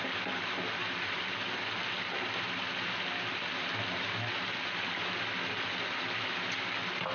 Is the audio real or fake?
real